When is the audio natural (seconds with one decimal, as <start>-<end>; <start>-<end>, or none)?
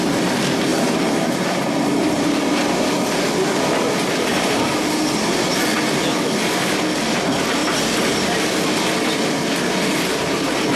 0.0-0.7; 2.8-4.3; 5.4-10.8